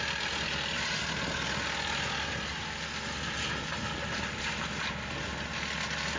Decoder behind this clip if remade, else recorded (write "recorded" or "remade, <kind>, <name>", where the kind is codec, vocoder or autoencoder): recorded